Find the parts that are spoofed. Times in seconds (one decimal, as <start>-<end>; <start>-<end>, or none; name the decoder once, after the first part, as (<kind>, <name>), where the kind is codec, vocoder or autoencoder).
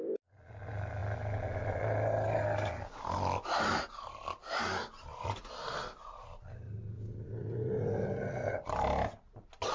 none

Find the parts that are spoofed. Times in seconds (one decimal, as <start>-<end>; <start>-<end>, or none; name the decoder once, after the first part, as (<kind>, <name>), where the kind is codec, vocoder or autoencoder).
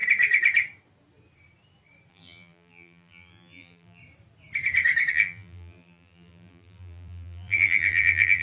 2.1-4.0 (vocoder, BigVGAN v2); 5.1-8.4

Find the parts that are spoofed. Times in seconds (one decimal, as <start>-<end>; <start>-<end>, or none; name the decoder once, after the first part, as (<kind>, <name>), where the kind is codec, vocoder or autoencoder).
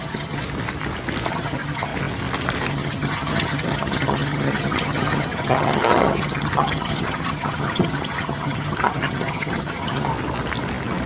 0.0-0.4 (vocoder, HiFi-GAN); 1.3-1.9; 2.7-10.1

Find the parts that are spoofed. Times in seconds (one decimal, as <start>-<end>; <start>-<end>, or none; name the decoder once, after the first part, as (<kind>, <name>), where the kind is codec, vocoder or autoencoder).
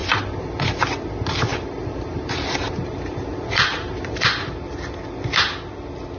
0.0-0.5 (vocoder, BigVGAN v2); 1.5-4.5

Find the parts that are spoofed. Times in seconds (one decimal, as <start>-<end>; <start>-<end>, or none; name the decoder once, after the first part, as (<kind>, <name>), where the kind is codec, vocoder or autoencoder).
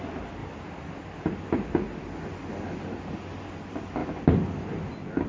none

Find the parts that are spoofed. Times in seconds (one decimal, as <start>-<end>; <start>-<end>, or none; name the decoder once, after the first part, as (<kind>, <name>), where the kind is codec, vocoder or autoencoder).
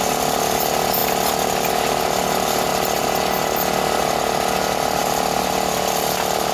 none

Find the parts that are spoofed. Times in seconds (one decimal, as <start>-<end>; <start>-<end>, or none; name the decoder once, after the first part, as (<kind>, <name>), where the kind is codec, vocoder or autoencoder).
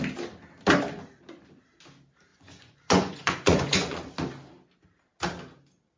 2.3-4.1 (vocoder, Vocos)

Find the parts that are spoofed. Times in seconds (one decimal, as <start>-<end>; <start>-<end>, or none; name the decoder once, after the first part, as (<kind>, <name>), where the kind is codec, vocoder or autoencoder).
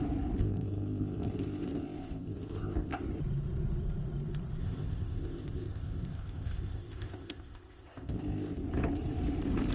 0.4-3.0 (codec, ZipCodec); 4.6-8.6